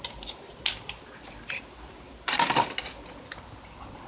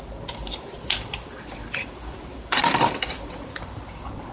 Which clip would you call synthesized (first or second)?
second